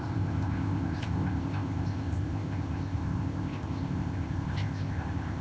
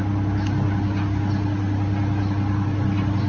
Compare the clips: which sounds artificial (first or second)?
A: first